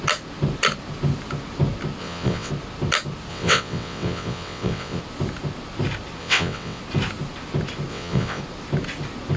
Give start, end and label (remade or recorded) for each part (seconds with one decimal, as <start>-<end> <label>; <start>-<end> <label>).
0.0-2.0 recorded; 2.0-2.5 remade; 2.5-3.3 recorded; 3.3-5.0 remade; 5.0-6.2 recorded; 6.2-6.8 remade; 6.8-7.9 recorded; 7.9-8.4 remade; 8.4-9.4 recorded

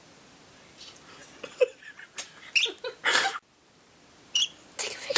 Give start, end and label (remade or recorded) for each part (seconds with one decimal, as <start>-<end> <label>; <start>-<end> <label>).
0.0-1.2 recorded; 1.2-1.8 remade; 1.8-5.2 recorded

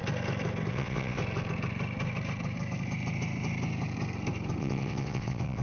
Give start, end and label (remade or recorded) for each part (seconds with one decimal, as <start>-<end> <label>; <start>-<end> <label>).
0.0-0.7 recorded; 0.7-1.2 remade; 1.2-4.6 recorded; 4.6-5.6 remade

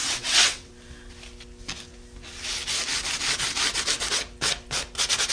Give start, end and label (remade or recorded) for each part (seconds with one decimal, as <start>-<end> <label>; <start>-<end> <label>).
0.0-0.7 remade; 0.7-5.3 recorded

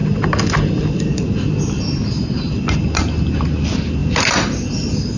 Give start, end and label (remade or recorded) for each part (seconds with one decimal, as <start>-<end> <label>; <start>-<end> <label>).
0.0-5.2 recorded

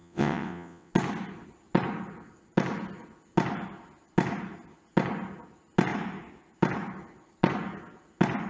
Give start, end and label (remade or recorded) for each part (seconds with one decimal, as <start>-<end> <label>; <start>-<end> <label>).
0.0-0.9 remade; 0.9-8.5 recorded

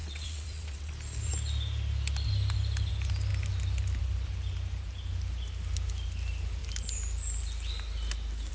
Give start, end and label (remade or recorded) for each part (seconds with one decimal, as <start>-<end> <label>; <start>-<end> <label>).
0.0-0.9 remade; 0.9-8.5 recorded